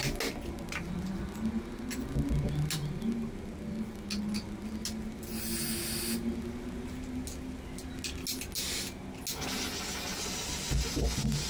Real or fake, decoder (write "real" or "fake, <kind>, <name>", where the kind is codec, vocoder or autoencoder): real